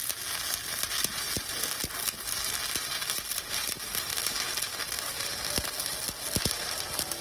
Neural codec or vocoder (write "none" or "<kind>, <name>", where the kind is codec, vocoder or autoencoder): none